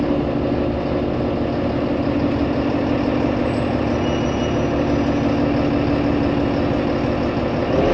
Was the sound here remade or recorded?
recorded